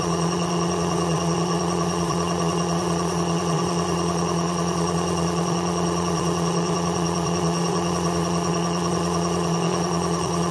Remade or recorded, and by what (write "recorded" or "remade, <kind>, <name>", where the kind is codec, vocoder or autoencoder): remade, vocoder, Vocos